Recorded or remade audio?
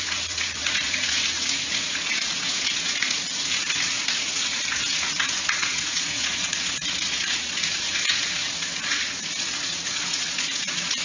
remade